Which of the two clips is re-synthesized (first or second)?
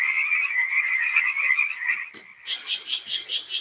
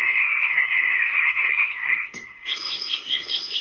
second